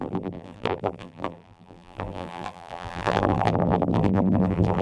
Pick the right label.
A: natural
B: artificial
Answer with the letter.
B